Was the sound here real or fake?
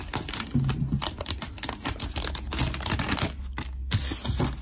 real